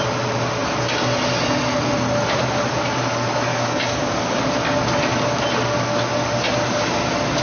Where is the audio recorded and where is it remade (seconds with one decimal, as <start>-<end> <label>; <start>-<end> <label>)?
0.0-3.5 recorded; 3.5-4.4 remade; 4.4-7.4 recorded